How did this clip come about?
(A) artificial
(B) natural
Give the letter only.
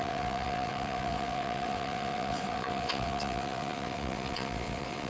A